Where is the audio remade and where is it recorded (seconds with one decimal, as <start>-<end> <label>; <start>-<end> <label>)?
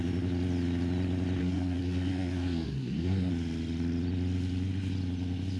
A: 0.0-1.4 recorded; 1.4-3.3 remade; 3.3-5.6 recorded